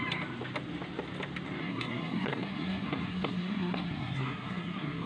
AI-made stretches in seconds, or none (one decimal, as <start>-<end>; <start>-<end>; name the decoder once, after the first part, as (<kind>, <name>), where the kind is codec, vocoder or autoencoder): 1.6-5.1 (codec, SNAC)

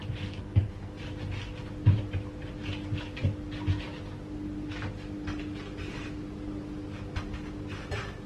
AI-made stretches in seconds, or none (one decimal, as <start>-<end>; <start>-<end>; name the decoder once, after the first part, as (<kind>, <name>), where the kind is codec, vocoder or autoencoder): 0.4-1.0 (codec, SNAC)